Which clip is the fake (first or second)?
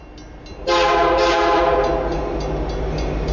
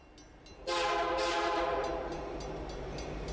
second